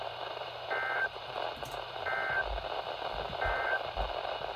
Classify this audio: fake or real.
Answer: fake